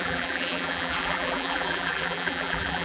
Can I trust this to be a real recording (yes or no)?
no